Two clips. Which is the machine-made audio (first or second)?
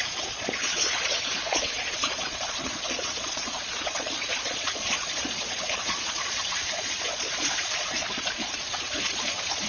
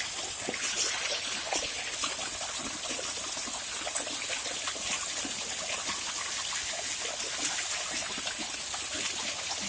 first